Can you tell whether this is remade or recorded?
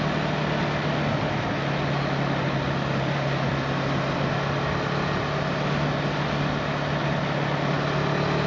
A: recorded